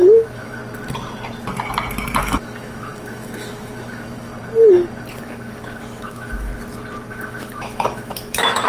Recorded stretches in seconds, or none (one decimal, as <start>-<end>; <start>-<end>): 0.6-2.2; 4.3-5.2; 6.5-7.1